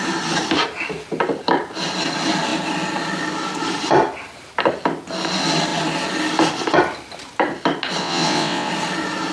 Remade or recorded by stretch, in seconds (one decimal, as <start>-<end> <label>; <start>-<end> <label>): 0.0-8.0 recorded; 8.0-8.7 remade; 8.7-9.3 recorded